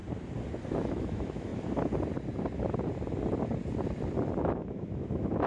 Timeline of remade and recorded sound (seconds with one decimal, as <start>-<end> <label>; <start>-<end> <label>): 0.0-0.9 recorded; 0.9-1.5 remade; 1.5-4.4 recorded; 4.4-5.5 remade

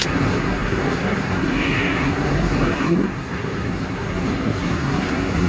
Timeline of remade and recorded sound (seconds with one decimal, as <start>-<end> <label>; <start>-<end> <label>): 0.0-5.5 remade

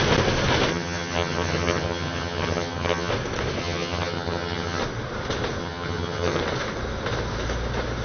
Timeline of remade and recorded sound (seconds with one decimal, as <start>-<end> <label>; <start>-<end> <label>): 0.0-0.7 recorded; 0.7-3.1 remade; 3.1-3.6 recorded; 3.6-4.8 remade; 4.8-5.6 recorded; 5.6-6.4 remade; 6.4-8.0 recorded

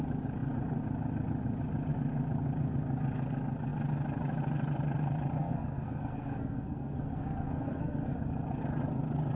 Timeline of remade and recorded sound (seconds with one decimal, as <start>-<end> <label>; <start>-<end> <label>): 0.0-5.4 recorded; 5.4-8.1 remade; 8.1-9.4 recorded

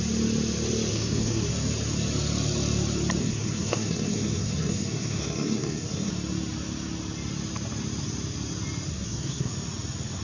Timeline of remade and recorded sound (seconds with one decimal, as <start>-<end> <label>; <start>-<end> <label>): 0.0-0.9 recorded; 0.9-1.5 remade; 1.5-3.2 recorded; 3.2-6.1 remade; 6.1-8.9 recorded; 8.9-9.5 remade; 9.5-10.2 recorded

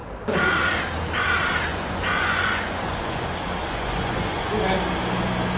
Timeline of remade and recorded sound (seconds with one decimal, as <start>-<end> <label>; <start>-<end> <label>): 0.0-1.7 recorded; 1.7-3.2 remade; 3.2-3.6 recorded; 3.6-4.5 remade; 4.5-5.6 recorded

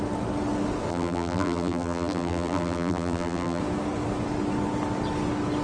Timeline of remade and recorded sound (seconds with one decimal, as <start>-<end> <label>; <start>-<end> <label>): 0.0-0.9 recorded; 0.9-3.6 remade; 3.6-5.6 recorded

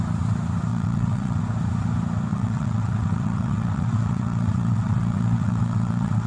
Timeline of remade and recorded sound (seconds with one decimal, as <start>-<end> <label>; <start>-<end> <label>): 0.0-0.7 recorded; 0.7-1.4 remade; 1.4-2.3 recorded; 2.3-6.3 remade